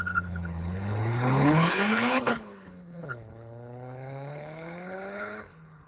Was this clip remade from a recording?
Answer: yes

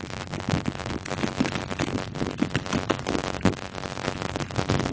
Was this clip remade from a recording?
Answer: no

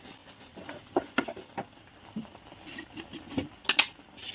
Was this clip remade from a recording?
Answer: no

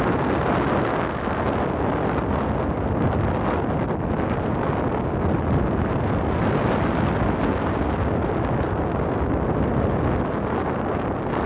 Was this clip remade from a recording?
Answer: no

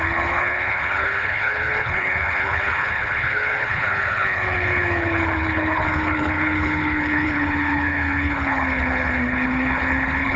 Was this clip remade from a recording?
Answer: yes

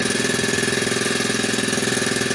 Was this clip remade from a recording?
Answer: no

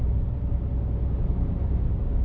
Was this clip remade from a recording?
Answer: no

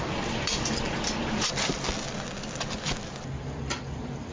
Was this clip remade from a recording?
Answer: no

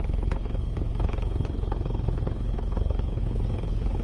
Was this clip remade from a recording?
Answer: yes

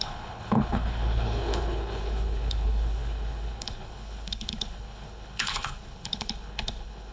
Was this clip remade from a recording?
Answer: yes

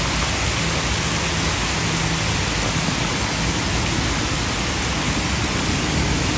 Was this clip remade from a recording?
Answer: no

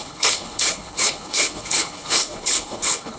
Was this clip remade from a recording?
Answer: yes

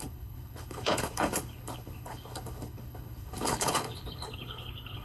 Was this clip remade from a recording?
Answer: yes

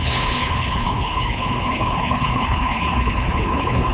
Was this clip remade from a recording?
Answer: yes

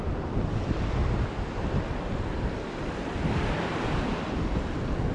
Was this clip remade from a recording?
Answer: no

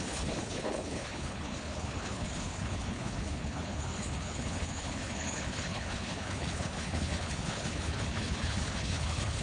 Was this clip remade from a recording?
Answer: yes